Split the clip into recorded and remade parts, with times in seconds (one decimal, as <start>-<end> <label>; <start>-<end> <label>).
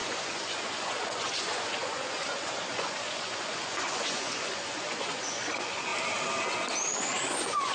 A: 0.0-5.9 remade; 5.9-7.0 recorded; 7.0-7.7 remade